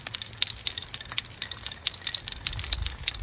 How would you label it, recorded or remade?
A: recorded